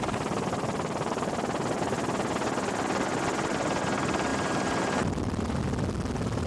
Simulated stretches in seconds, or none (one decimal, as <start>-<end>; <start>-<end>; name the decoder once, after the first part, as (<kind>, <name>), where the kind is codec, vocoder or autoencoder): 4.3-5.6 (vocoder, BigVGAN v2)